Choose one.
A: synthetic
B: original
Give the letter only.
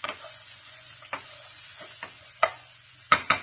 A